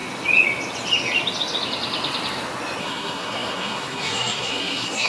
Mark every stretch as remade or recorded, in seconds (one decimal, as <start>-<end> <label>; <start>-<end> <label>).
0.0-2.8 recorded; 2.8-5.1 remade